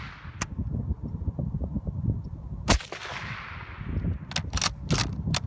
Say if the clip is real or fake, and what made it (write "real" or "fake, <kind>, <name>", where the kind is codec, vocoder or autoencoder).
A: real